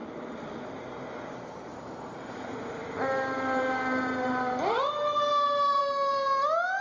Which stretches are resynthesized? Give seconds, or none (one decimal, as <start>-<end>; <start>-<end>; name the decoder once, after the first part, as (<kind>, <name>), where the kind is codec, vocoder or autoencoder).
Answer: 0.0-0.7 (vocoder, BigVGAN v2); 1.7-5.8